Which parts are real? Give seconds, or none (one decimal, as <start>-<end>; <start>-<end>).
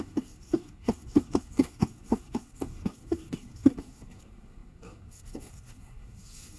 none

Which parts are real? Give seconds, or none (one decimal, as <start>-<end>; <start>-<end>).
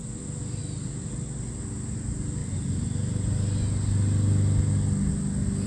0.0-5.7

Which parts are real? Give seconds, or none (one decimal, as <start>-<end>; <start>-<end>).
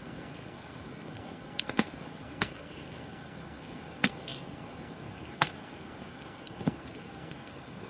none